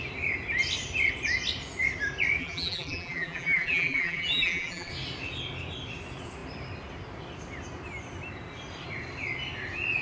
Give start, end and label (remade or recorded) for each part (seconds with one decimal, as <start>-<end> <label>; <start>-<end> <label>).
0.0-2.4 recorded; 2.4-4.9 remade; 4.9-10.0 recorded